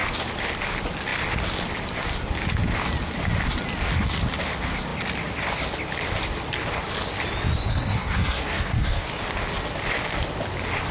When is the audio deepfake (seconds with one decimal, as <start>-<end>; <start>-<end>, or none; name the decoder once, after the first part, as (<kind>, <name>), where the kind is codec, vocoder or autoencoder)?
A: 7.7-9.1 (codec, SNAC)